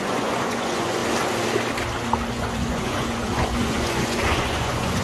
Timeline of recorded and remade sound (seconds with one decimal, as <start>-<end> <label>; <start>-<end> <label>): 0.0-1.0 remade; 1.0-2.3 recorded; 2.3-5.0 remade